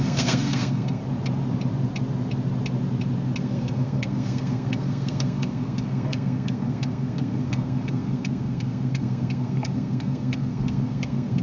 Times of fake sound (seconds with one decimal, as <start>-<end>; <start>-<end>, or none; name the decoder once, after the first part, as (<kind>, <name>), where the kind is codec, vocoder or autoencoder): 0.0-1.0 (codec, SNAC); 3.4-11.4

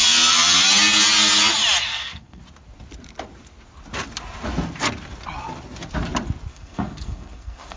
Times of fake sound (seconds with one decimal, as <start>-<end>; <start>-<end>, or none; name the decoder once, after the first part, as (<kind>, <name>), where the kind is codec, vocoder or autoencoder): 1.9-2.4 (codec, SNAC); 6.5-7.8